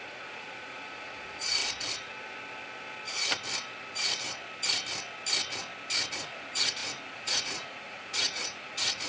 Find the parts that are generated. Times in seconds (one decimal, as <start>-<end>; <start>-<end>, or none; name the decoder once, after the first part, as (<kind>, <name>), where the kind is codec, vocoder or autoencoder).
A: 0.0-1.6 (vocoder, Vocos); 6.1-9.1